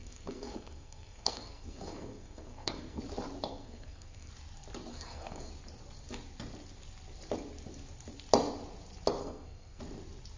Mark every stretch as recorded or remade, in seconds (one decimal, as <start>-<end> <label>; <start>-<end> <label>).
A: 0.0-3.0 remade; 3.0-3.5 recorded; 3.5-4.3 remade; 4.3-4.9 recorded; 4.9-5.5 remade; 5.5-9.2 recorded; 9.2-9.8 remade; 9.8-10.4 recorded